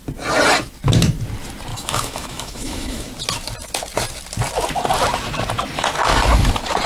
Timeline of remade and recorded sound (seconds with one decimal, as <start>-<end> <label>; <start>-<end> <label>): 0.0-1.7 recorded; 1.7-3.1 remade; 3.1-6.9 recorded